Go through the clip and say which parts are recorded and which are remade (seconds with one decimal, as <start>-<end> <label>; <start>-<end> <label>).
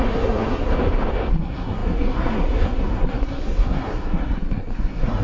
0.0-0.7 remade; 0.7-1.3 recorded; 1.3-5.2 remade